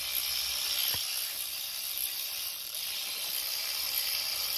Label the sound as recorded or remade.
recorded